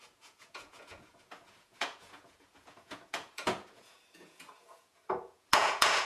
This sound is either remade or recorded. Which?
remade